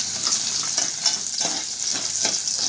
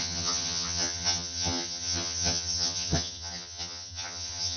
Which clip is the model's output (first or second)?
second